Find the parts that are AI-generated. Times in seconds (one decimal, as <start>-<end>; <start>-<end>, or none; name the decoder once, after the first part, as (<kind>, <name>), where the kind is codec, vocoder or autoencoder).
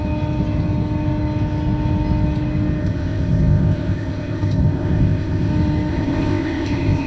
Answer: 2.8-5.5 (codec, ZipCodec); 5.9-7.1